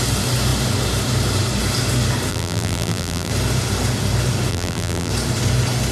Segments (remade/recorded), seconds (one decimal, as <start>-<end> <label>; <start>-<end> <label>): 0.0-2.3 recorded; 2.3-3.3 remade; 3.3-4.5 recorded; 4.5-5.1 remade; 5.1-5.9 recorded